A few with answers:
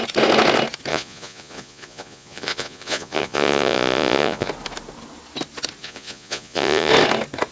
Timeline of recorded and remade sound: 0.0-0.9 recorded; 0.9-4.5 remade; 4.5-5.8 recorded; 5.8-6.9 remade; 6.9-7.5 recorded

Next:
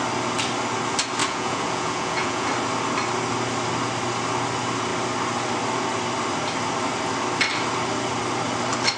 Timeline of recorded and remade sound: 0.0-1.2 recorded; 1.2-2.5 remade; 2.5-9.0 recorded

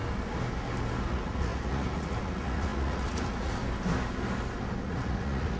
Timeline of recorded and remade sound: 0.0-1.1 recorded; 1.1-3.6 remade; 3.6-4.8 recorded; 4.8-5.6 remade

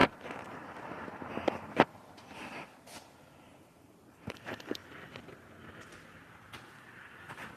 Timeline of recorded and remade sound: 0.0-4.8 remade; 4.8-7.6 recorded

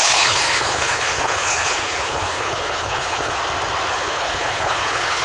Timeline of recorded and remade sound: 0.0-3.4 remade; 3.4-3.9 recorded; 3.9-5.2 remade

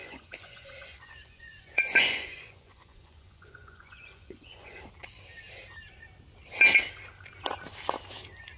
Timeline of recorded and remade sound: 0.0-4.8 remade; 4.8-8.6 recorded

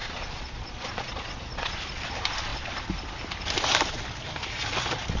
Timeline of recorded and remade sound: 0.0-1.8 remade; 1.8-5.2 recorded